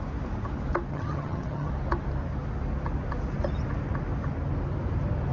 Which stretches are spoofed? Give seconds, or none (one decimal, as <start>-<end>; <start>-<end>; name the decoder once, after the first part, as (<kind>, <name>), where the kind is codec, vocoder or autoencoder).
0.9-1.7 (vocoder, HiFi-GAN)